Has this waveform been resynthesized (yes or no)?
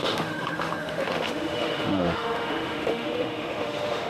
yes